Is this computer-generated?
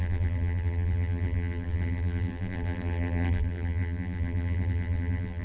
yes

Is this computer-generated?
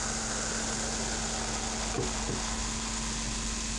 no